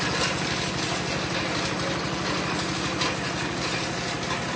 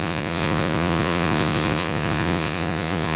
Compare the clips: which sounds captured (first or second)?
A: first